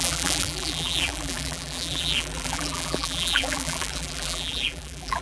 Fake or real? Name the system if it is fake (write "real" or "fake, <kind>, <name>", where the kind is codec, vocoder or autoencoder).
fake, vocoder, BigVGAN v2